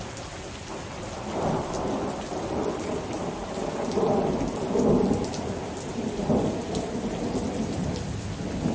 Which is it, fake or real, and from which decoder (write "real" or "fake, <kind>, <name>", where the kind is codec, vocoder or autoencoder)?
real